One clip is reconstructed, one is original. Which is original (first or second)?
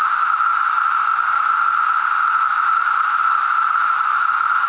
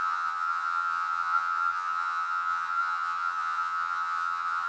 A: first